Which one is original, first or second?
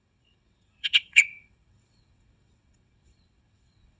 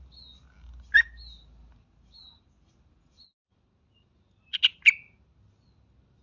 second